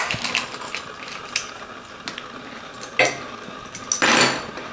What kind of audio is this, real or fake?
real